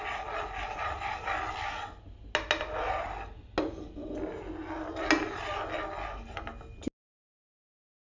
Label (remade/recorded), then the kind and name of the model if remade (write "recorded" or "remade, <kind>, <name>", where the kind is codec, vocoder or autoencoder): recorded